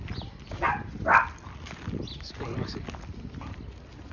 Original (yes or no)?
yes